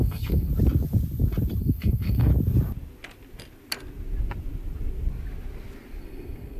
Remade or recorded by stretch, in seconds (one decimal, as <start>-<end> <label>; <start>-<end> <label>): 0.0-0.5 remade; 0.5-1.6 recorded; 1.6-2.3 remade; 2.3-6.0 recorded; 6.0-6.6 remade